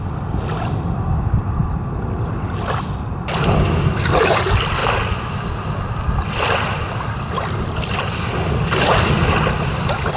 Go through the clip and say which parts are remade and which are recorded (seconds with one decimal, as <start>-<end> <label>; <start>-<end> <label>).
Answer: 0.0-10.2 recorded